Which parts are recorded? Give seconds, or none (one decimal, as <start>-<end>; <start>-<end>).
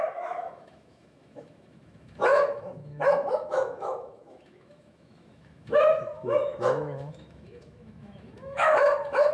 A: none